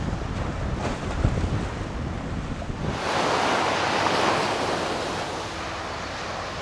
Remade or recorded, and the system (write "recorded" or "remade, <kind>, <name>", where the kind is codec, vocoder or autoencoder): recorded